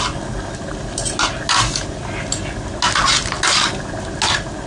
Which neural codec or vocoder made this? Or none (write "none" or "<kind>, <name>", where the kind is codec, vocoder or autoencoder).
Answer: none